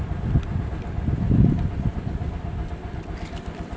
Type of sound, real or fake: real